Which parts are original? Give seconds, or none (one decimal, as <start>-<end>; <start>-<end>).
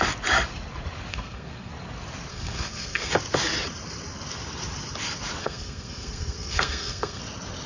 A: 0.0-1.1; 1.7-2.3; 3.1-5.4; 7.2-7.7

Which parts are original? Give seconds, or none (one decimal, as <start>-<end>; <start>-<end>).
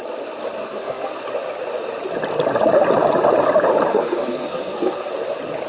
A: 0.0-0.6; 1.1-3.9; 5.1-5.7